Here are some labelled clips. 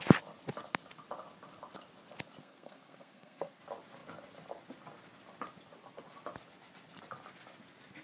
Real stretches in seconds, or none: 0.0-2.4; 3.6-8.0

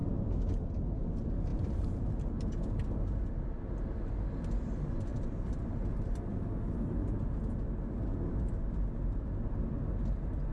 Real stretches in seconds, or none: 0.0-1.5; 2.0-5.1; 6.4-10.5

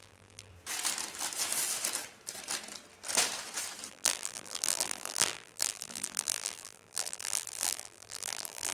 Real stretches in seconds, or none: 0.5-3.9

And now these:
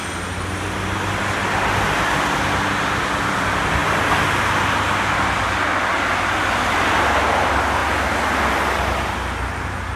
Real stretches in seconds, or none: 0.0-10.0